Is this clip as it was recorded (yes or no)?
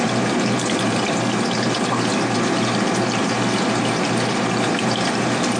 no